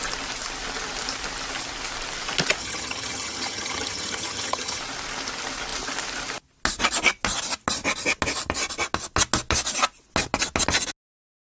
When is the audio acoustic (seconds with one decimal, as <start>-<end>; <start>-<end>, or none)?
0.0-2.6; 4.8-11.5

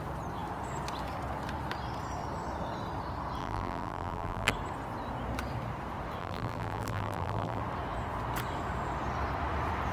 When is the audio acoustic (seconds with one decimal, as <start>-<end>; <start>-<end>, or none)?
0.0-3.4; 4.5-6.2; 7.6-9.9